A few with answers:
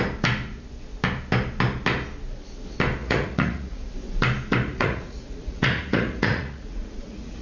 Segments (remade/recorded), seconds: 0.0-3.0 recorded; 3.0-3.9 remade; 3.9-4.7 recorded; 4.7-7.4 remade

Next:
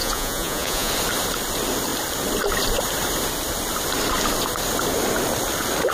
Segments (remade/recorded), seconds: 0.0-0.9 remade; 0.9-5.9 recorded

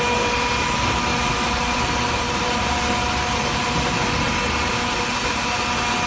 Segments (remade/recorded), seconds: 0.0-1.1 recorded; 1.1-2.8 remade; 2.8-6.1 recorded

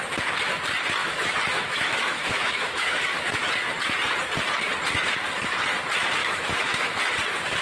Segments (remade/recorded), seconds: 0.0-1.0 recorded; 1.0-3.2 remade; 3.2-6.2 recorded; 6.2-7.0 remade; 7.0-7.6 recorded